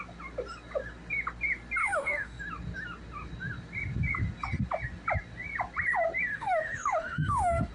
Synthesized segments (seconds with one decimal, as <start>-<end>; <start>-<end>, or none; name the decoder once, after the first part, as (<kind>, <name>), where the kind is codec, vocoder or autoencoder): 1.8-2.4 (autoencoder, DAC-VAE); 6.3-7.7